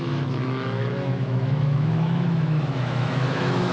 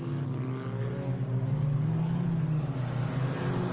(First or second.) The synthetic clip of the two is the first